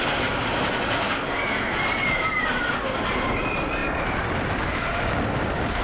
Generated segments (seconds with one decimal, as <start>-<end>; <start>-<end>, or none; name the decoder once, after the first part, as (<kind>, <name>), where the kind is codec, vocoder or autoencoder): none